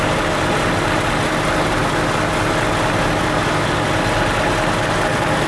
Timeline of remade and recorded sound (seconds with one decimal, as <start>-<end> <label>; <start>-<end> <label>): 0.0-5.5 recorded